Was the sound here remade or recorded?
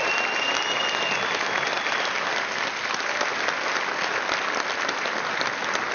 recorded